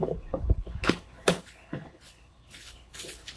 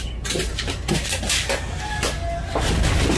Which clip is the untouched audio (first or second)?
second